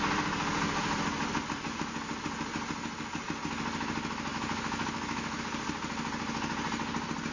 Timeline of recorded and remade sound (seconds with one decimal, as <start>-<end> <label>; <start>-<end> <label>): 0.0-4.3 recorded; 4.3-5.4 remade; 5.4-7.3 recorded